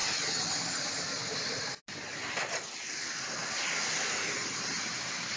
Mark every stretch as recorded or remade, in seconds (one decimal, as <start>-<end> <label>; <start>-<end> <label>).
0.0-5.4 recorded